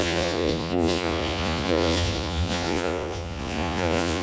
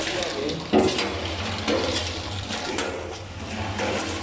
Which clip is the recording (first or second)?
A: second